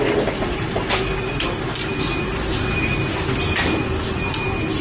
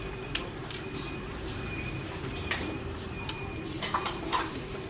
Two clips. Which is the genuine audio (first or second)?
first